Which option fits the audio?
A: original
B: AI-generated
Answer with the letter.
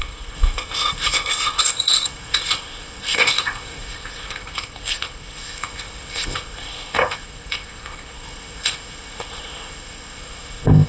B